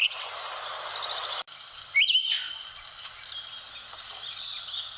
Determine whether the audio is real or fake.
real